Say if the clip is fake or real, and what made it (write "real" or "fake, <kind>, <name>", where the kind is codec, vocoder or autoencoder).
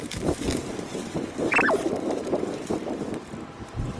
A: real